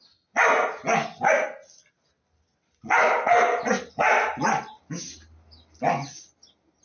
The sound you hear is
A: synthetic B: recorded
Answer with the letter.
B